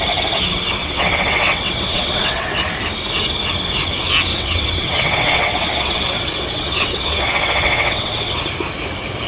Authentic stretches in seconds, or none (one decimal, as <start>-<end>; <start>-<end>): 0.0-0.8; 2.6-4.3; 8.3-9.3